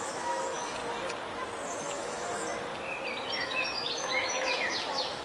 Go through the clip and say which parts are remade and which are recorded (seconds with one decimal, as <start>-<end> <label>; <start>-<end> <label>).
0.0-0.8 remade; 0.8-1.8 recorded; 1.8-2.4 remade; 2.4-3.4 recorded; 3.4-5.2 remade